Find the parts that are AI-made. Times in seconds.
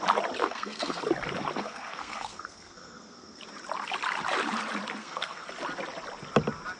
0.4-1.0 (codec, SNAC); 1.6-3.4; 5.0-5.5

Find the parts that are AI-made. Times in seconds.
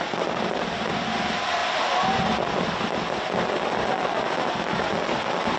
none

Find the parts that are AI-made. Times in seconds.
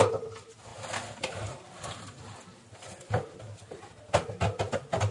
none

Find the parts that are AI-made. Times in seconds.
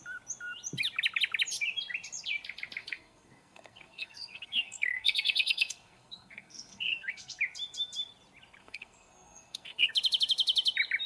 2.8-7.4 (codec, SNAC); 8.6-9.9